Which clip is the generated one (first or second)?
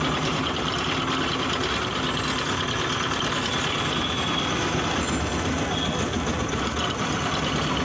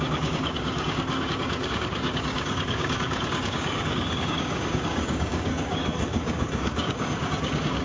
second